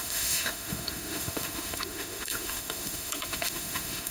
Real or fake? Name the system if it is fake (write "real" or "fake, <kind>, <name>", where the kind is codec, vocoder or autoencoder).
fake, autoencoder, DAC-VAE